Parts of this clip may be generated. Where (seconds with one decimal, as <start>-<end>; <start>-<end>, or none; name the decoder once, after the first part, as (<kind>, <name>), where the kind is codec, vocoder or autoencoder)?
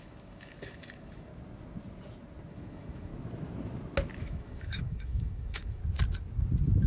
0.0-1.3 (autoencoder, DAC-VAE); 2.5-3.1; 4.2-5.8